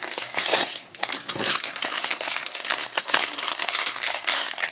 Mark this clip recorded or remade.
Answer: remade